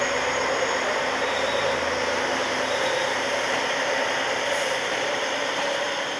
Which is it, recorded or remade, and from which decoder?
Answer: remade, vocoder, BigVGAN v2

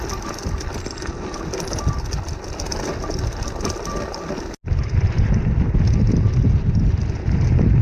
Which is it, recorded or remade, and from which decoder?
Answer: recorded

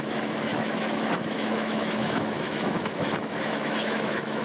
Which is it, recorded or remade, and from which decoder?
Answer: remade, autoencoder, DAC-VAE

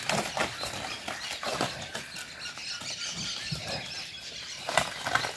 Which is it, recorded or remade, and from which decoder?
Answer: recorded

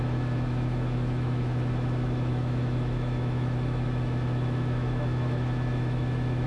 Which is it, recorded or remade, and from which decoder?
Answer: remade, autoencoder, DAC-VAE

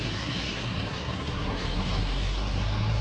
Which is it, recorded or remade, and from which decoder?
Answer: remade, codec, SNAC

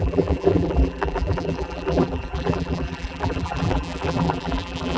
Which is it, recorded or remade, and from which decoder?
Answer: remade, vocoder, BigVGAN v2